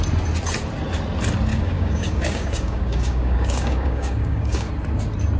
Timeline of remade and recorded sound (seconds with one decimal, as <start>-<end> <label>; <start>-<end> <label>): 0.0-1.5 recorded; 1.5-4.7 remade; 4.7-5.4 recorded